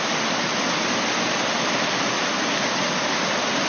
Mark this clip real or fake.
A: real